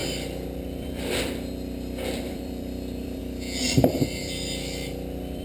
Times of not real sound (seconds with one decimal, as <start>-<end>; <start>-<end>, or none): 0.0-5.4